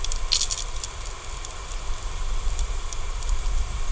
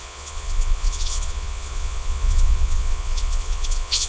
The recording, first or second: first